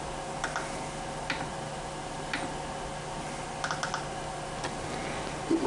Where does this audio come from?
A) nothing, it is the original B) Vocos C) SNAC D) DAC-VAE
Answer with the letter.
A